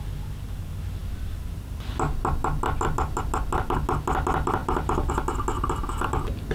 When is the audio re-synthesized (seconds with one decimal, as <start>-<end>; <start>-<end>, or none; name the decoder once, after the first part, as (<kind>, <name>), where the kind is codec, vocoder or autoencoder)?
4.6-5.1 (vocoder, BigVGAN v2)